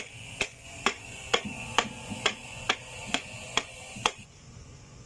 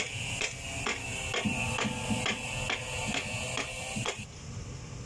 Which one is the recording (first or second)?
second